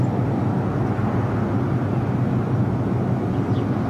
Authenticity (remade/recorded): recorded